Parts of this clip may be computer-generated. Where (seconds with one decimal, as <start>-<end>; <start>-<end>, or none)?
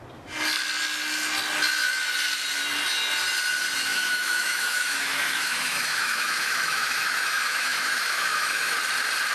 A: 3.9-8.8